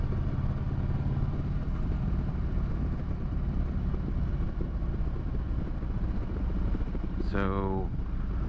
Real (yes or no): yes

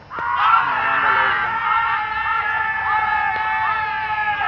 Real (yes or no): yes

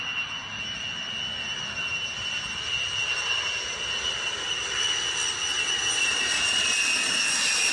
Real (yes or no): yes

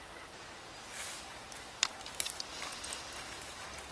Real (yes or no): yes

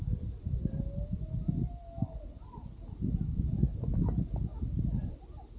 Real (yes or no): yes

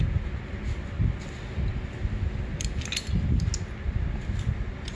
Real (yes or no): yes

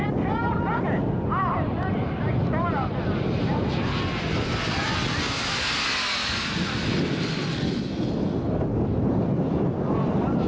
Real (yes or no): yes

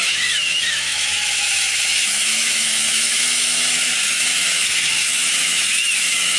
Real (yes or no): no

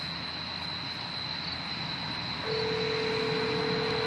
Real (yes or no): yes